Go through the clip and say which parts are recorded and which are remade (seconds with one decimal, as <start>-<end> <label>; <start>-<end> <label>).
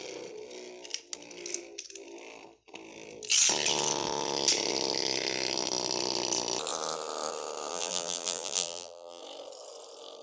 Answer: 0.0-7.7 recorded; 7.7-9.2 remade; 9.2-10.2 recorded